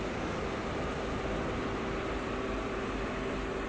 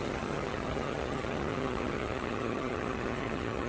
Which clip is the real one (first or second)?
first